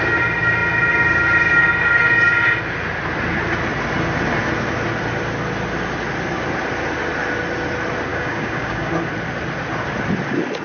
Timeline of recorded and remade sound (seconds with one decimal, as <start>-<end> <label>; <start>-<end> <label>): 0.0-8.1 recorded; 8.1-8.9 remade; 8.9-10.6 recorded